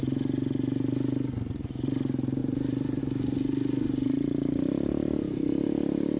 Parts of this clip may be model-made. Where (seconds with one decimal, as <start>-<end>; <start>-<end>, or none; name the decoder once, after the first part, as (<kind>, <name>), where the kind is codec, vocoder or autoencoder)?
2.4-3.0 (vocoder, BigVGAN v2)